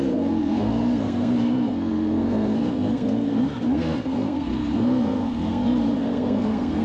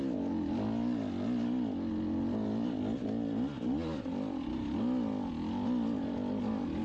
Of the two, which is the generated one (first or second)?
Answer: first